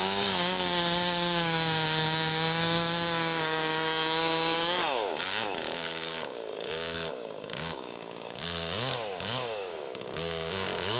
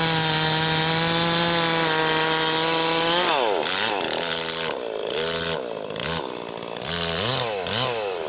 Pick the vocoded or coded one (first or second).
first